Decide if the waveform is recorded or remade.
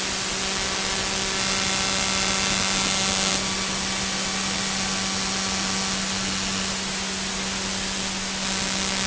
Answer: recorded